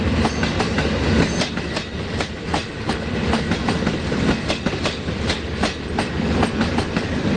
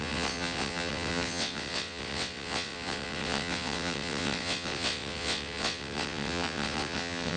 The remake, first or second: second